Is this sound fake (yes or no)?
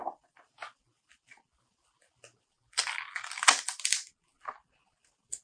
no